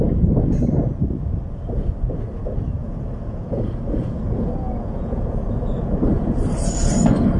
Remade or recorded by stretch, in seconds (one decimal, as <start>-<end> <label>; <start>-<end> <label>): 0.0-2.8 recorded; 2.8-6.4 remade; 6.4-7.4 recorded